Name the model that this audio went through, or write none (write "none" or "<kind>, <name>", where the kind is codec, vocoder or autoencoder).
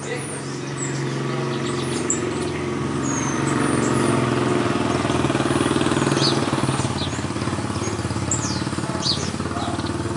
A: none